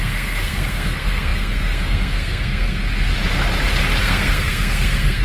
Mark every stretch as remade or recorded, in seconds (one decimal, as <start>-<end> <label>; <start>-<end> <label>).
0.0-3.1 remade; 3.1-4.0 recorded; 4.0-5.2 remade